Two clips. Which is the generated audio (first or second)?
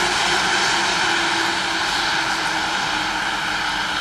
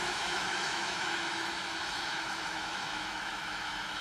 second